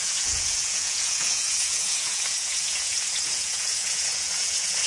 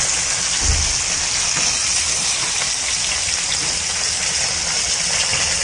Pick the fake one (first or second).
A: first